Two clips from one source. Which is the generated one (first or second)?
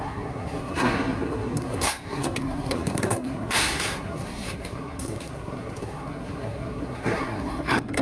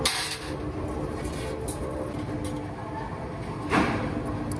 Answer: first